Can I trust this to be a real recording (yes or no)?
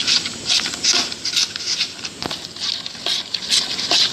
yes